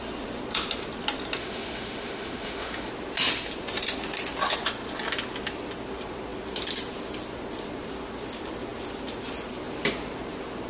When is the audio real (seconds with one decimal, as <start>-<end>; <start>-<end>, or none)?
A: 0.0-1.4; 2.9-10.7